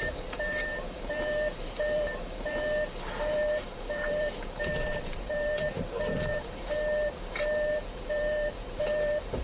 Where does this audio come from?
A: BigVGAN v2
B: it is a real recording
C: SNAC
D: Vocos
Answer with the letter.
A